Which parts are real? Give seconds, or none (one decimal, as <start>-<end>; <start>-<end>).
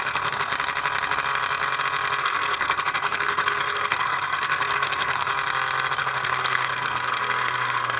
0.5-2.2; 5.3-6.0